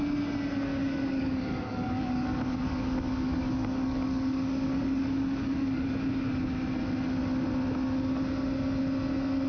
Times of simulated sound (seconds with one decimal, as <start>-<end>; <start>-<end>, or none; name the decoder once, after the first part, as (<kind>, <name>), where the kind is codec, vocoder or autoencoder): 0.8-5.9 (codec, DAC)